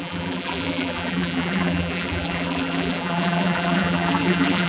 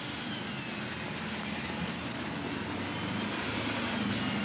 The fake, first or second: first